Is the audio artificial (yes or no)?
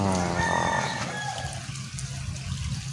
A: no